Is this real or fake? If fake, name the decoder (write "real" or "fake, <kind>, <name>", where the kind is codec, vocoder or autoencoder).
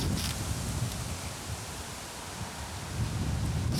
real